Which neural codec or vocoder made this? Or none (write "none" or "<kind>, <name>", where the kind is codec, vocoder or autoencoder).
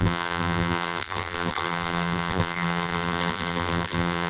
vocoder, BigVGAN v2